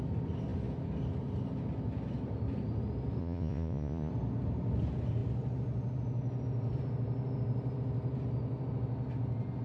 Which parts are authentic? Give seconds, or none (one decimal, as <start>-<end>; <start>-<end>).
0.0-3.2; 4.1-9.6